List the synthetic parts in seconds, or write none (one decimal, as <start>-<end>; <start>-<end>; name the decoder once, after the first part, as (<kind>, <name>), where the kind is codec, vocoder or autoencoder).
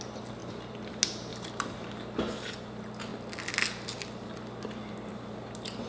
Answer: 1.3-2.2 (vocoder, BigVGAN v2)